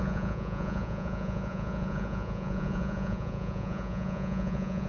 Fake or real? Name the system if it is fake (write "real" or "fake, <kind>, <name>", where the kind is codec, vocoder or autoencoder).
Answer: fake, vocoder, Vocos